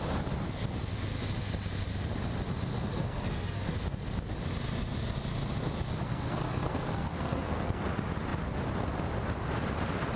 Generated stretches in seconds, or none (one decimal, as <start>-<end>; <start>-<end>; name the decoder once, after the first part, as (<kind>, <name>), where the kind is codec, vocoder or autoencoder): 2.9-3.7 (codec, SNAC); 6.0-7.8